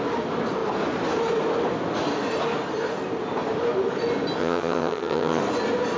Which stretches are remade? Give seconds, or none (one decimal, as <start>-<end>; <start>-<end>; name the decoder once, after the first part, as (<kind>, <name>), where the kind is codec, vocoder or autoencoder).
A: 4.4-5.4 (vocoder, HiFi-GAN)